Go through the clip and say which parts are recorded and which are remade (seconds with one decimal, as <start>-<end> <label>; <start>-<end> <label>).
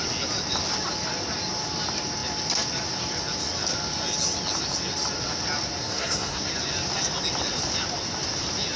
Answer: 0.0-5.8 recorded; 5.8-6.5 remade; 6.5-8.8 recorded